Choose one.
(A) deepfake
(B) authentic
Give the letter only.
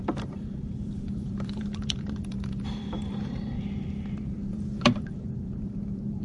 A